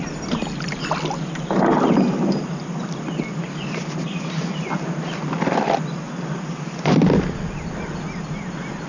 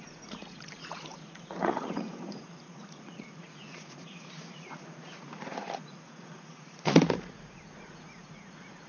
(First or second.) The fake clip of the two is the second